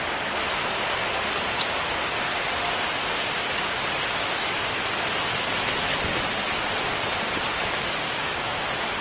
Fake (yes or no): no